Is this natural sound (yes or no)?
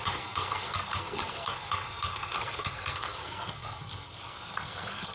no